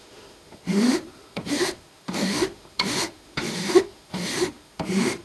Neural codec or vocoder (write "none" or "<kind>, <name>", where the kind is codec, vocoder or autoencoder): autoencoder, DAC-VAE